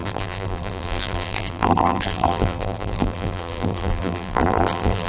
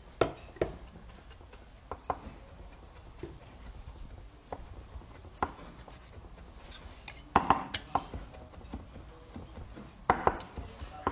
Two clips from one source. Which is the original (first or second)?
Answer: second